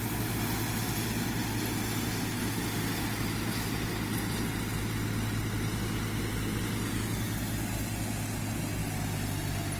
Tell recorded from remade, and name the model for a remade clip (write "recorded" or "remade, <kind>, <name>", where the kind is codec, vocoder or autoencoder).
recorded